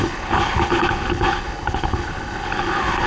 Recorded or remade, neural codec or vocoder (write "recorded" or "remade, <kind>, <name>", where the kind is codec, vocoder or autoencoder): remade, codec, HILCodec